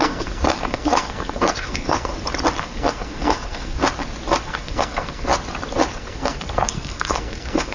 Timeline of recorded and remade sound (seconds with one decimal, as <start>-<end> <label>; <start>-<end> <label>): 0.0-2.1 remade; 2.1-2.6 recorded; 2.6-3.8 remade; 3.8-4.4 recorded; 4.4-5.3 remade; 5.3-5.9 recorded; 5.9-7.7 remade